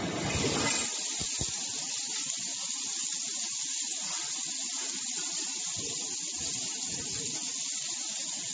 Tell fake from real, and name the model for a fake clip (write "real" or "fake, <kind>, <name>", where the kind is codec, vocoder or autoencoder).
real